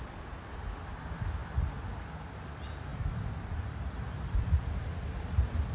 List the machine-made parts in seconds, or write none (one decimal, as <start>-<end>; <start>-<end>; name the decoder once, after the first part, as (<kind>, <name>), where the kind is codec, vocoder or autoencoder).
2.9-4.9 (vocoder, BigVGAN v2)